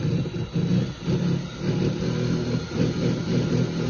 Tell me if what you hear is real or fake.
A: real